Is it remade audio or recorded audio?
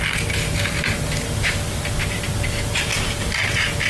recorded